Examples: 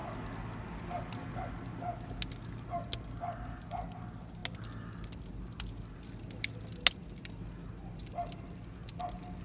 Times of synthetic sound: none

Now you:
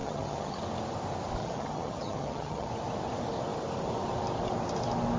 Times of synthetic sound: 0.0-0.6; 1.4-2.7

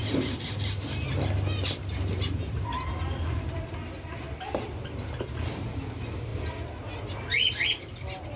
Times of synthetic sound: none